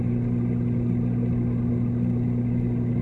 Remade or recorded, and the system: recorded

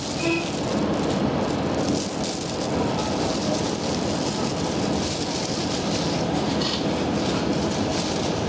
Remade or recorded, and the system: recorded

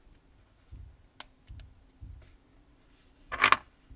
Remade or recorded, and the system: recorded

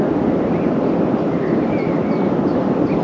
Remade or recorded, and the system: recorded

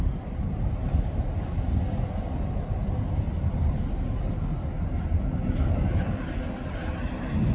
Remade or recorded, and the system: recorded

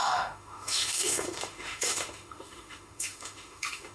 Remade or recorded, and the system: remade, autoencoder, DAC-VAE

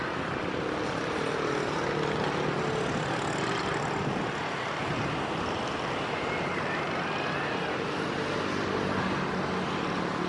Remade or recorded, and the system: recorded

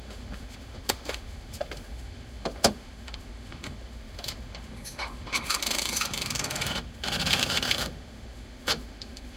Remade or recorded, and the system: remade, autoencoder, DAC-VAE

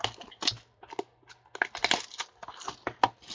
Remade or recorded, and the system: recorded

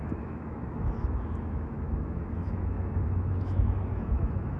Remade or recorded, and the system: remade, autoencoder, DAC-VAE